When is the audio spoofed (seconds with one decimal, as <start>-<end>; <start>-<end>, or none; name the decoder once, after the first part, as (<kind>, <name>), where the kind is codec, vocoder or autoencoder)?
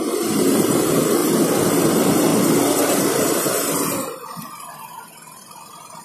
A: 0.0-1.2 (vocoder, BigVGAN v2); 1.8-2.3